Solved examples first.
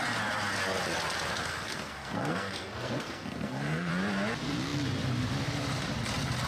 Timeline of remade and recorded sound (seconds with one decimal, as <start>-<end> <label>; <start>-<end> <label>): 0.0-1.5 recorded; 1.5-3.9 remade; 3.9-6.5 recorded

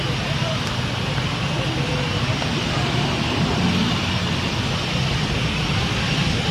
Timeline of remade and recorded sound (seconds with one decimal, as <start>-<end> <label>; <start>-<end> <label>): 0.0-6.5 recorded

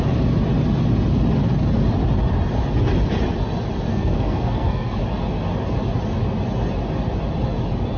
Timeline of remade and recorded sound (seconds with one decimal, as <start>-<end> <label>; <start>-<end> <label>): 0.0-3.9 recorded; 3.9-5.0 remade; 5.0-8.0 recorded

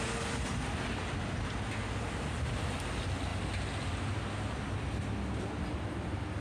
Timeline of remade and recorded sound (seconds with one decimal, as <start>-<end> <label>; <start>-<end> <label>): 0.0-6.4 recorded